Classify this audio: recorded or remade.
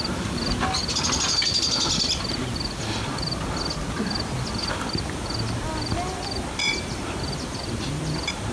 recorded